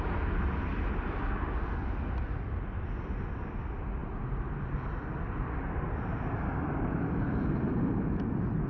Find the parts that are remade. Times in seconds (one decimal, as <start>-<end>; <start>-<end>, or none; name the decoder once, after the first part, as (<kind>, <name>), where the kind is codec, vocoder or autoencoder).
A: none